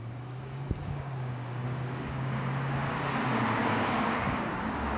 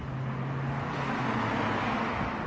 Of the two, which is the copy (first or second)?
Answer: first